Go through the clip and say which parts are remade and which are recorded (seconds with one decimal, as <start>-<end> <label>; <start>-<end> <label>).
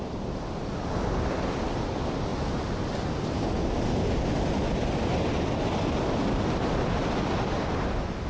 0.0-8.3 recorded